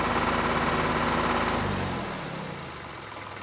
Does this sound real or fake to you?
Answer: real